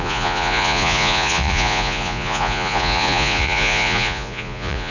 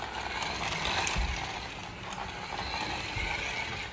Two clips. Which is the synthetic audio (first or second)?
first